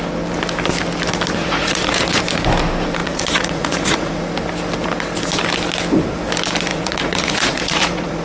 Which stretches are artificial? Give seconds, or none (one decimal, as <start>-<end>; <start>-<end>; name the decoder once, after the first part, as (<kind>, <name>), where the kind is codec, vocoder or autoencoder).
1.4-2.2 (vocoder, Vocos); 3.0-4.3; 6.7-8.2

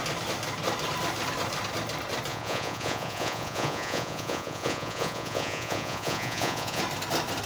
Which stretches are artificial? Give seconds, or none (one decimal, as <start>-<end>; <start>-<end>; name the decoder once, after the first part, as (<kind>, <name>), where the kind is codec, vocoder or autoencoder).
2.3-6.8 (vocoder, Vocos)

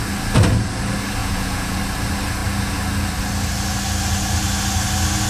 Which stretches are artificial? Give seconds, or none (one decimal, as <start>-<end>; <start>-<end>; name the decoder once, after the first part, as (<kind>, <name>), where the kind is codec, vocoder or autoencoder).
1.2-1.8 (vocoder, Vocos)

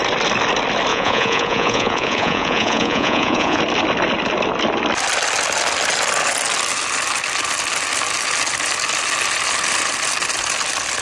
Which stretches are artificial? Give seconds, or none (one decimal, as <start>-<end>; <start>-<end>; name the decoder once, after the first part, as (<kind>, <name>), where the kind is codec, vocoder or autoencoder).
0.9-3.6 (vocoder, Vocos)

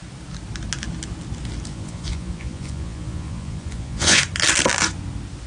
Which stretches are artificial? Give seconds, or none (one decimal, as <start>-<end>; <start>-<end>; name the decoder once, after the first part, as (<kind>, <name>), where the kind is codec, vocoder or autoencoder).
1.7-4.2 (vocoder, Vocos)